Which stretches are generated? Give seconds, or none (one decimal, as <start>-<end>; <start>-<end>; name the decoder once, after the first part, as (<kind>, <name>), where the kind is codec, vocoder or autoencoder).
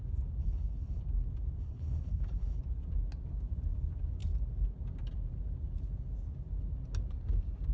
0.4-1.0 (codec, HILCodec); 1.6-2.6